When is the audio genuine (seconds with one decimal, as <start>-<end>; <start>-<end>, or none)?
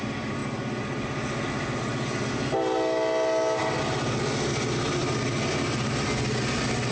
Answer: 0.0-6.9